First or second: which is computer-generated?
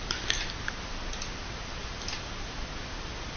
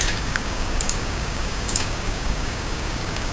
second